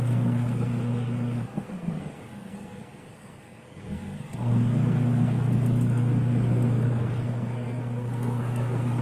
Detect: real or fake fake